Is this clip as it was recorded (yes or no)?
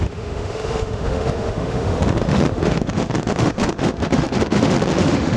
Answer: no